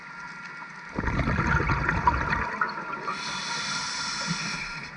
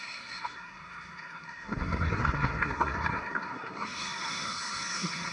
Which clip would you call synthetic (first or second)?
second